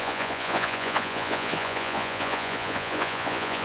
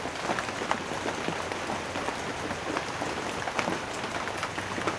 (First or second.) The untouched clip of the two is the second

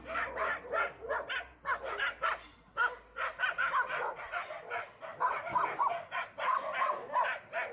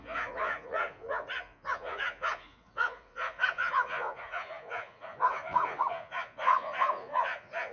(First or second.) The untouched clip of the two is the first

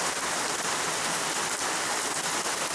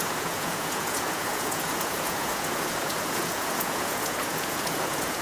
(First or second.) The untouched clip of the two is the first